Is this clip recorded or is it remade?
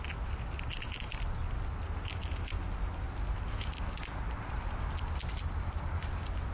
recorded